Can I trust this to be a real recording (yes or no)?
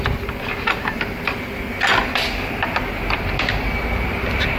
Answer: yes